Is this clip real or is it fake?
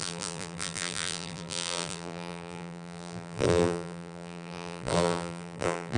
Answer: fake